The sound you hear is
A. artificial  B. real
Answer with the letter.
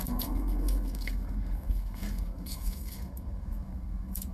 A